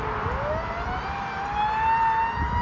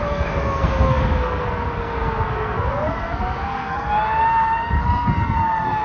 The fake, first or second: second